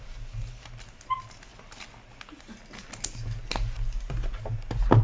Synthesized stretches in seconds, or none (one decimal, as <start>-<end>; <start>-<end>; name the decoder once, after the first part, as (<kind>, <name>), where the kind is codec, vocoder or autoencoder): none